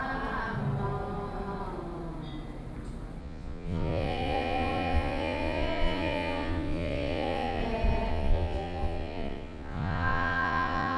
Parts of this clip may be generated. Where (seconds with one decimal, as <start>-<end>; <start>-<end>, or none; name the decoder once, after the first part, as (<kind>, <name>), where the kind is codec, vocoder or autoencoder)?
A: 3.2-7.6 (vocoder, Vocos); 8.1-11.0